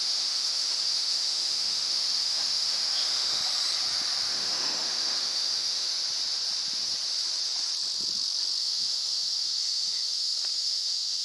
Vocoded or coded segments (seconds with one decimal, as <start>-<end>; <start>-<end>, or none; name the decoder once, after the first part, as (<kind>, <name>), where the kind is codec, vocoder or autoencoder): 0.0-3.4 (autoencoder, DAC-VAE); 4.3-5.9; 8.6-11.2